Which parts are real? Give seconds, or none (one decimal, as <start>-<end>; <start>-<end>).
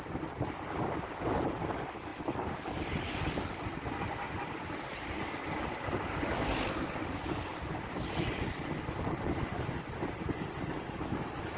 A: 0.0-11.6